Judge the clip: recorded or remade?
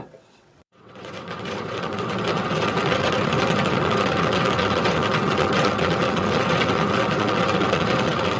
remade